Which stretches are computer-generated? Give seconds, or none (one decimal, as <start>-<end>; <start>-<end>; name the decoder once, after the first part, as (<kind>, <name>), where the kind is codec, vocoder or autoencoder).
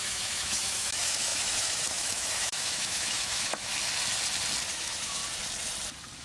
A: 0.0-3.7 (autoencoder, DAC-VAE); 4.7-5.2